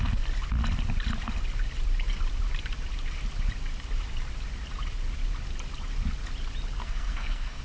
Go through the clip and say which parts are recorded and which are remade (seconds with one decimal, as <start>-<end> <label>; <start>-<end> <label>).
0.0-6.8 recorded; 6.8-7.6 remade